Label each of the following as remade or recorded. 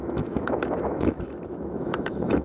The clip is remade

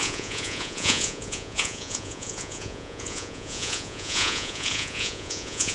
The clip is remade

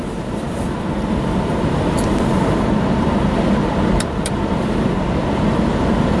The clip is remade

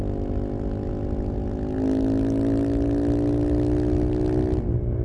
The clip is recorded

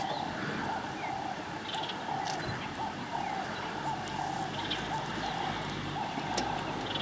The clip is recorded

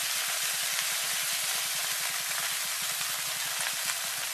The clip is recorded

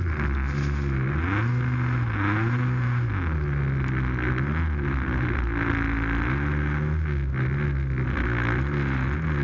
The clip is recorded